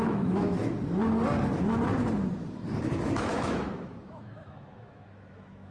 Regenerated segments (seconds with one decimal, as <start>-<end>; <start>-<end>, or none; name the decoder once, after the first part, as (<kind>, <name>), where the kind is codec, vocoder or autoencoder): 0.0-0.6 (autoencoder, DAC-VAE); 2.8-5.7